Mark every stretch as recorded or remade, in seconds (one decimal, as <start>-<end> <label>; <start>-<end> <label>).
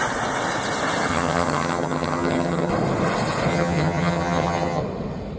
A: 0.0-1.1 recorded; 1.1-2.7 remade; 2.7-3.5 recorded; 3.5-4.8 remade; 4.8-5.4 recorded